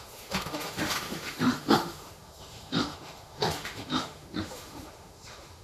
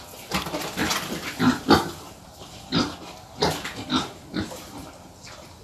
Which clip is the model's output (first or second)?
first